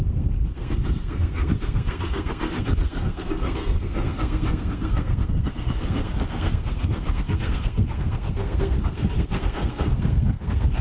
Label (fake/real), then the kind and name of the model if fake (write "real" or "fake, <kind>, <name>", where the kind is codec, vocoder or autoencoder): fake, codec, SNAC